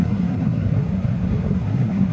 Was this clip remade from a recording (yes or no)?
yes